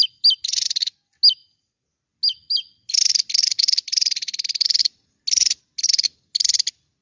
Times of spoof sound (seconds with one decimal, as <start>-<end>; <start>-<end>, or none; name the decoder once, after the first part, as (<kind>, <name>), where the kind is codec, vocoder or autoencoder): none